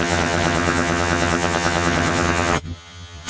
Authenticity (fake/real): fake